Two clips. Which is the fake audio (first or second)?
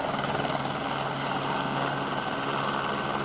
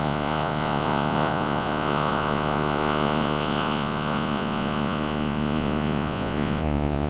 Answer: second